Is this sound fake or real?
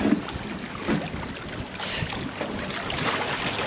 real